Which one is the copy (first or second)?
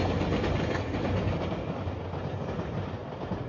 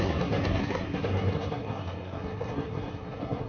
second